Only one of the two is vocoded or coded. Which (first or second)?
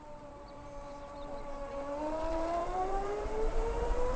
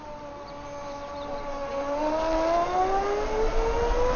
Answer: first